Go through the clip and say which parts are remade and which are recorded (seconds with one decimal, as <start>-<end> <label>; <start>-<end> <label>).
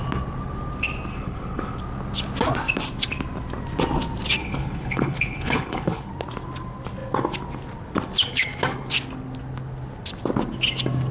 0.0-1.1 recorded; 1.1-1.8 remade; 1.8-4.4 recorded; 4.4-6.1 remade; 6.1-11.1 recorded